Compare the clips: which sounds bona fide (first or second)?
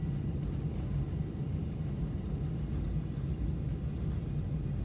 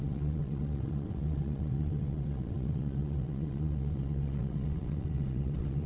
first